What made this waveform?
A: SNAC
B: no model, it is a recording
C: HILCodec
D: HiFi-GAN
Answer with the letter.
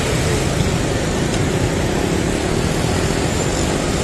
B